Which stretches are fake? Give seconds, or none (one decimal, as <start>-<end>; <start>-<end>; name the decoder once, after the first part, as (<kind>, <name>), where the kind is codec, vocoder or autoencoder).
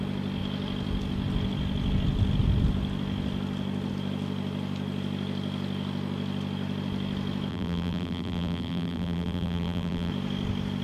7.5-10.1 (vocoder, BigVGAN v2)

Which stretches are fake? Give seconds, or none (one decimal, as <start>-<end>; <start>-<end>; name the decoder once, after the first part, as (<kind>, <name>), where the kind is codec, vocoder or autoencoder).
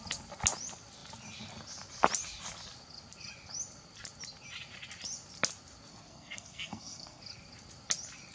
5.9-7.2 (codec, SNAC)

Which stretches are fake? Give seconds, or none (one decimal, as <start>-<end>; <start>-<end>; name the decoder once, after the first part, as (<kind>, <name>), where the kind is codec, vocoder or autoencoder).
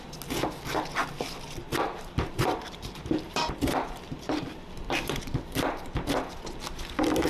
1.7-5.9 (vocoder, BigVGAN v2)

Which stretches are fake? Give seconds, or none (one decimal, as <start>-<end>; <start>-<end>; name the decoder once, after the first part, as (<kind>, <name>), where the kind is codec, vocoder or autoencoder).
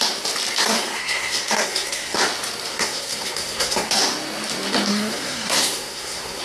0.6-2.2 (codec, SNAC); 2.7-4.0; 4.9-6.4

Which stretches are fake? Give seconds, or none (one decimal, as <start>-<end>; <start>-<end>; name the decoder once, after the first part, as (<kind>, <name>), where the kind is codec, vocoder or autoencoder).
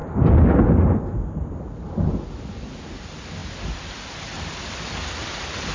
none